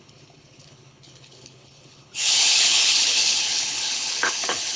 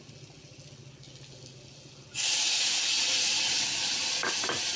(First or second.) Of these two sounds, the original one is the second